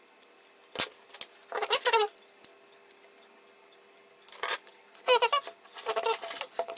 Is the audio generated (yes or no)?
no